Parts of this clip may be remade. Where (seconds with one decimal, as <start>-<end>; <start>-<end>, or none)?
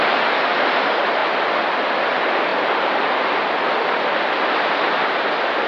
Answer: none